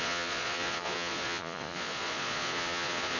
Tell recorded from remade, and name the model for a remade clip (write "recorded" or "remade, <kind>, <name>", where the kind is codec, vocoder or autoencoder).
remade, vocoder, Vocos